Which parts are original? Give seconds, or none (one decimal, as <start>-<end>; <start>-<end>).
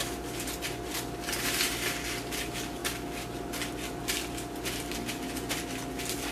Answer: 0.0-6.3